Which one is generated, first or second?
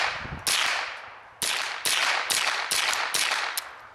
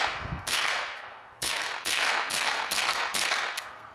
second